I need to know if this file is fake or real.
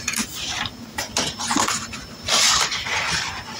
real